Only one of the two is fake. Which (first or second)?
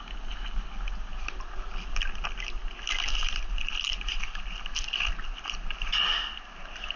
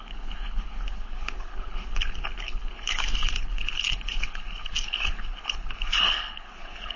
second